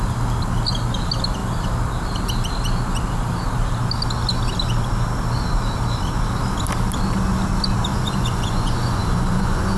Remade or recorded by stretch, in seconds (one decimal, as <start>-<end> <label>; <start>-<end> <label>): 0.0-7.9 recorded; 7.9-9.8 remade